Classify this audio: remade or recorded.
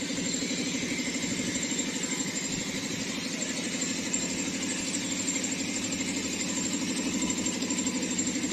recorded